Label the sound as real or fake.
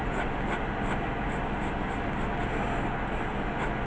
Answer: real